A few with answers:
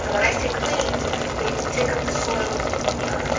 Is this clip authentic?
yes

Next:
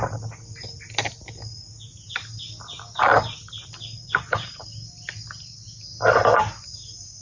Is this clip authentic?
yes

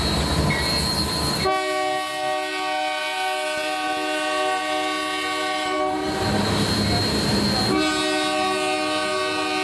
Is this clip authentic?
yes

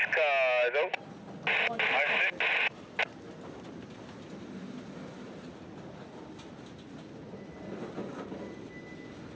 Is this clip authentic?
yes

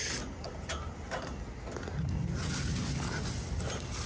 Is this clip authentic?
yes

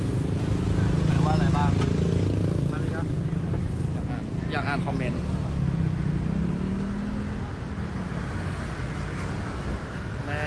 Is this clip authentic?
yes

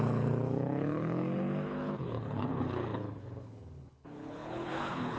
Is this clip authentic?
no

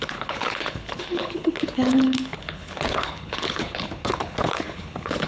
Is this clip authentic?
no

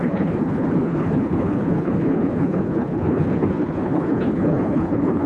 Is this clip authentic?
no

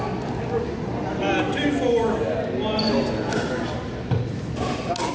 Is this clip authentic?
yes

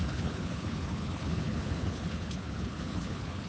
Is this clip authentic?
no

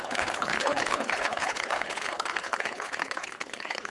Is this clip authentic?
no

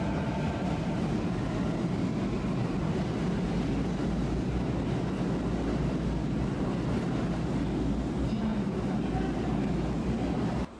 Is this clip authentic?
yes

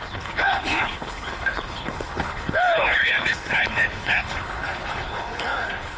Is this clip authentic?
no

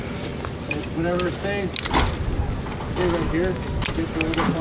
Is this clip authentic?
yes